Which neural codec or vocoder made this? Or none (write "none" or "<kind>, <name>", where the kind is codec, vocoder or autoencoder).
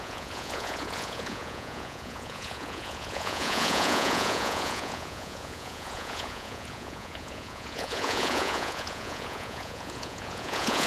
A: vocoder, Vocos